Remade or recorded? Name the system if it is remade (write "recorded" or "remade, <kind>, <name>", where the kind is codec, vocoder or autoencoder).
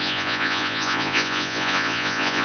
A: remade, vocoder, Vocos